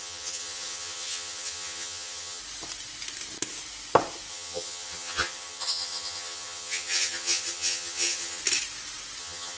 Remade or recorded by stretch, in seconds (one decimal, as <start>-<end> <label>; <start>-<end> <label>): 0.0-2.4 remade; 2.4-4.3 recorded; 4.3-8.4 remade; 8.4-9.2 recorded; 9.2-9.6 remade